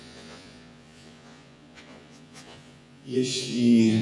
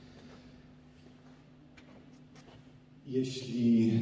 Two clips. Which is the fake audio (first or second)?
first